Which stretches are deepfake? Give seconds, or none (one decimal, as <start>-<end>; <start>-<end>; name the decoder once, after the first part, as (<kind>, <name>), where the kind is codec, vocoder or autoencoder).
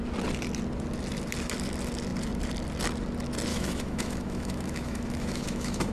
3.5-5.9 (autoencoder, DAC-VAE)